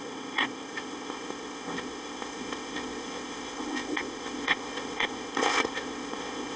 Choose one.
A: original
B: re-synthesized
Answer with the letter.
B